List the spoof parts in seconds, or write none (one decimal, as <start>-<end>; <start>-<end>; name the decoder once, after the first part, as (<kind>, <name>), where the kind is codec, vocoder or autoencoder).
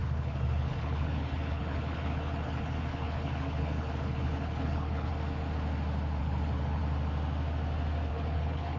0.0-5.1 (codec, HILCodec); 6.2-6.8; 8.1-8.8